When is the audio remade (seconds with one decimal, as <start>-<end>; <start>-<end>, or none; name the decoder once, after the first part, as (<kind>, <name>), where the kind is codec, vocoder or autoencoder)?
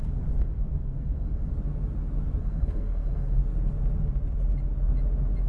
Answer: 0.0-1.5 (codec, SNAC); 2.4-3.4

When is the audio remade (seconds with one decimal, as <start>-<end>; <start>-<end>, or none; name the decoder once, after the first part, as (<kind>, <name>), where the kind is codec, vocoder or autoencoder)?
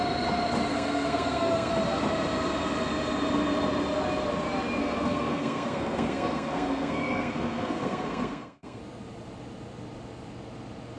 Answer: 0.7-1.7 (codec, SNAC); 4.8-8.8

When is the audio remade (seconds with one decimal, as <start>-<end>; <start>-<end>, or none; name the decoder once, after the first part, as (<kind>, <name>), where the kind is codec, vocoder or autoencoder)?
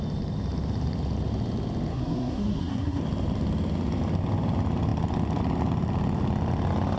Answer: 1.9-3.0 (codec, SNAC)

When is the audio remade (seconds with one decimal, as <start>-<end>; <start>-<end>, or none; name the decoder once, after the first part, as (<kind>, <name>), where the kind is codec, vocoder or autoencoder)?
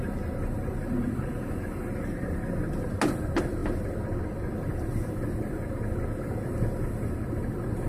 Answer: none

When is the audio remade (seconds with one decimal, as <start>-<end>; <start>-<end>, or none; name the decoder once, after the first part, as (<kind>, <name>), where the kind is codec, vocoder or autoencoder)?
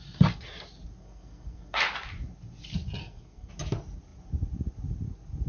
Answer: 1.0-1.8 (codec, SNAC); 3.0-3.5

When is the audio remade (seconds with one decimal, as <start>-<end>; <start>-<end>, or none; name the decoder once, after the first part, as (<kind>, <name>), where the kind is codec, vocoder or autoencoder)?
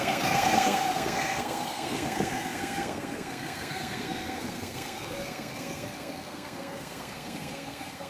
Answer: 0.0-8.1 (codec, SNAC)